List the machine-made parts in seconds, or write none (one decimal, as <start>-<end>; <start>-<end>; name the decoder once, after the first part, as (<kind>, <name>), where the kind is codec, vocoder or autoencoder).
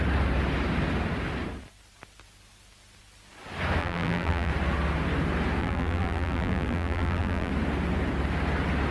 3.8-4.5 (vocoder, BigVGAN v2); 5.6-7.5